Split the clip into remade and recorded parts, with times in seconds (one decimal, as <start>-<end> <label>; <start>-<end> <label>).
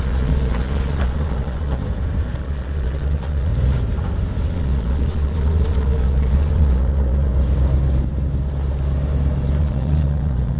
0.0-1.8 remade; 1.8-2.4 recorded; 2.4-3.5 remade; 3.5-4.5 recorded; 4.5-7.3 remade; 7.3-9.6 recorded; 9.6-10.6 remade